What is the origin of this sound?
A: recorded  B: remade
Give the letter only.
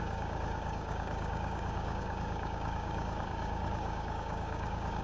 B